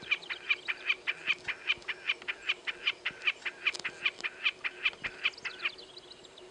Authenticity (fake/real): real